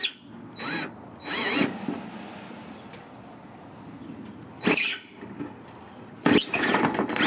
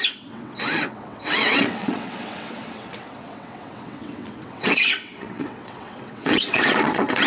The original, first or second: first